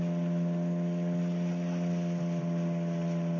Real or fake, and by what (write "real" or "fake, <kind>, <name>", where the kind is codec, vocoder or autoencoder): real